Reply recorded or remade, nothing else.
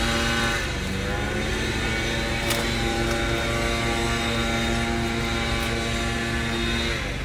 recorded